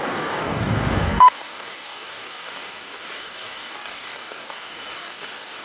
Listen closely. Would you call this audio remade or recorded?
remade